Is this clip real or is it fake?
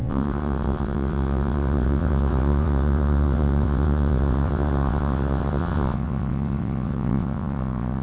fake